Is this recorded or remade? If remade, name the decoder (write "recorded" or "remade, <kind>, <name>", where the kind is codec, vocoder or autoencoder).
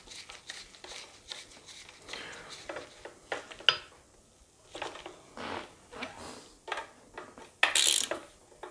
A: recorded